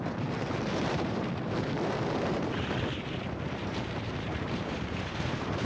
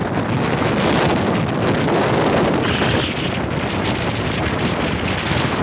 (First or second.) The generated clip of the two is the first